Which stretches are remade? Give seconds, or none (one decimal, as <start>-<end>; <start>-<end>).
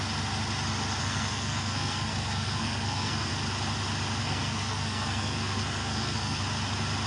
1.0-3.3; 4.2-6.4